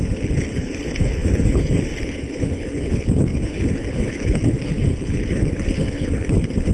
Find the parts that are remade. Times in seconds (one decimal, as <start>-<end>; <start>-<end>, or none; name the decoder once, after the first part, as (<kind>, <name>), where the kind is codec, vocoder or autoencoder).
0.0-6.7 (codec, HILCodec)